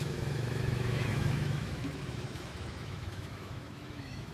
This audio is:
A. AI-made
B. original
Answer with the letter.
A